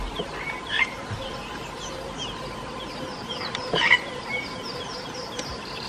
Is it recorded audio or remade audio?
remade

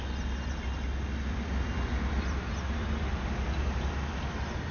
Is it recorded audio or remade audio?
recorded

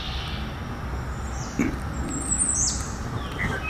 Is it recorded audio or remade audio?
recorded